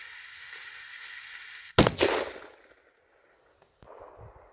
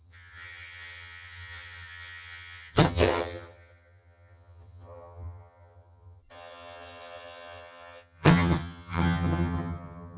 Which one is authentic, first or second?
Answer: first